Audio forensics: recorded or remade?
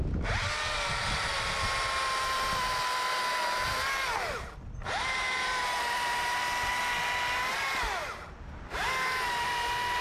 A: recorded